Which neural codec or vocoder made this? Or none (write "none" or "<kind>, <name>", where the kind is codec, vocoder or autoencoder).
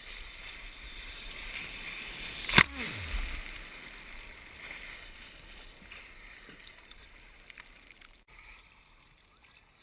vocoder, BigVGAN v2